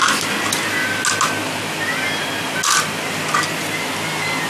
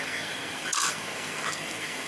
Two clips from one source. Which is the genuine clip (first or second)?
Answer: first